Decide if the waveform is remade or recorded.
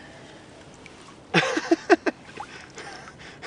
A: recorded